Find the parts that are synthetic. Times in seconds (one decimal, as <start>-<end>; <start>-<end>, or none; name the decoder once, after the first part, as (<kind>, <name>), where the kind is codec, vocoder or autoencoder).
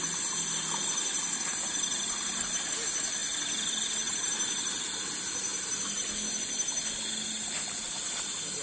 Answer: none